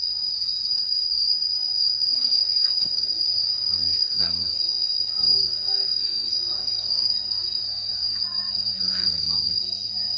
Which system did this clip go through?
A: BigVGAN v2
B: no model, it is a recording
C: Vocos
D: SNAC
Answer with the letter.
D